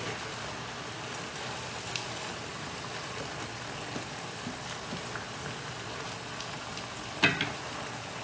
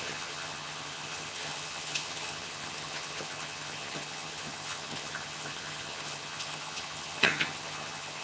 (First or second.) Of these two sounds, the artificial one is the second